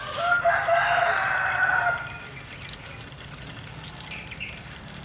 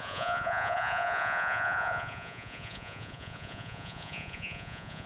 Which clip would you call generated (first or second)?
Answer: second